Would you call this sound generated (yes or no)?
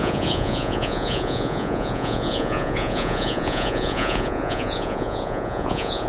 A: yes